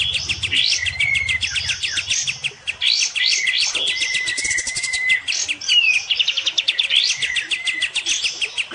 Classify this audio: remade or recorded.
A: recorded